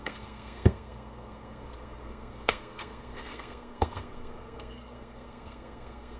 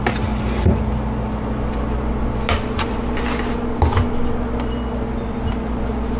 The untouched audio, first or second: second